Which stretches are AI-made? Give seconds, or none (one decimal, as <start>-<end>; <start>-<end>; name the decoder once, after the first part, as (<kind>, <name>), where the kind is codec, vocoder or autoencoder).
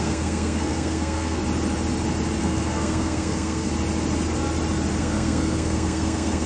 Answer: 0.0-1.4 (codec, SNAC); 2.4-3.7; 5.0-6.5